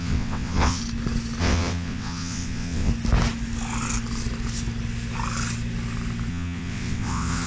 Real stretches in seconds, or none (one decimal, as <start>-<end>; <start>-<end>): 0.8-1.4; 2.9-6.3